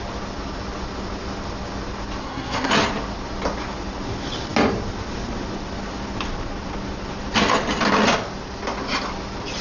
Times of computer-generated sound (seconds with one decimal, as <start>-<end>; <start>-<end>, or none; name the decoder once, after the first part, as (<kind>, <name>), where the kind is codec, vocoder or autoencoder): 2.2-2.7 (codec, SNAC)